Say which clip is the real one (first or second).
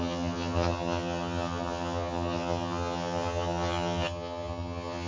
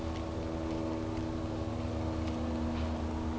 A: second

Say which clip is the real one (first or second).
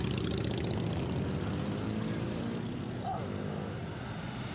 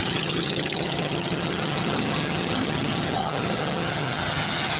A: first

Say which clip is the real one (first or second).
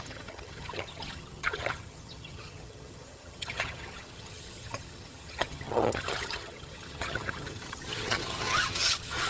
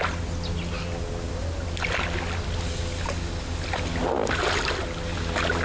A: second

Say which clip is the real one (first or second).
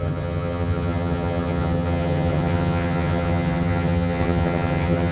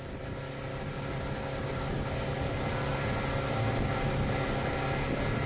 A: second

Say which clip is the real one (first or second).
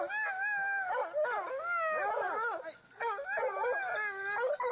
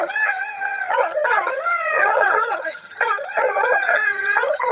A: first